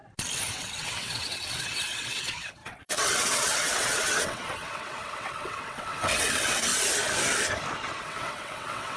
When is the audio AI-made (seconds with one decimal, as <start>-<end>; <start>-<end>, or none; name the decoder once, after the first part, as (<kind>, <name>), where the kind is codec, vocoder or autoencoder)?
0.5-6.7 (vocoder, WaveNeXt); 8.0-9.0